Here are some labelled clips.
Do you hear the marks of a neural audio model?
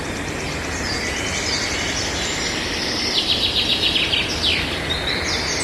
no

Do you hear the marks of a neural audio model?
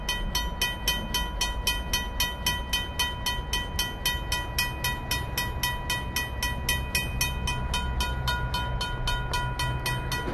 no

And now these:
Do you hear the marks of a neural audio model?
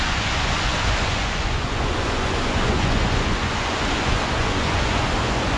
yes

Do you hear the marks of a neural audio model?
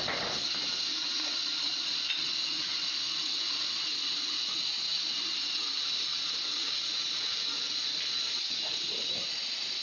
no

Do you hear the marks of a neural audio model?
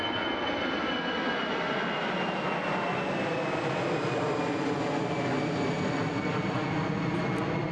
no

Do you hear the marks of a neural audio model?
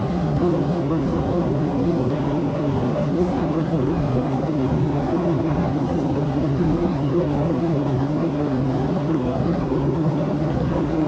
yes